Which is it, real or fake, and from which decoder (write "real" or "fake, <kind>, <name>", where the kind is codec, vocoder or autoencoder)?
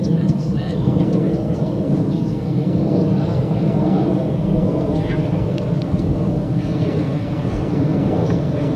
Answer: fake, codec, SNAC